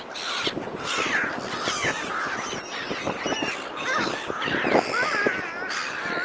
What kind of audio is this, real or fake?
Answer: real